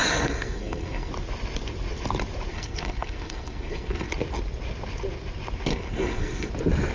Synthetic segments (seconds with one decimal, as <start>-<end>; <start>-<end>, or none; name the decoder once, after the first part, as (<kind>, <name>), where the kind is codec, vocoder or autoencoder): 0.0-1.1 (codec, SNAC); 2.5-4.1; 5.7-6.5